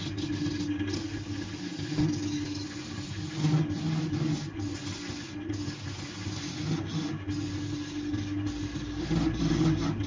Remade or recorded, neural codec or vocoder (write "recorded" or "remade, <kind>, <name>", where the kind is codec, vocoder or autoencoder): recorded